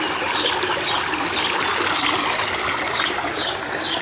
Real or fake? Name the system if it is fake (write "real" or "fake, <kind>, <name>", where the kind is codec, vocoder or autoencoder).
real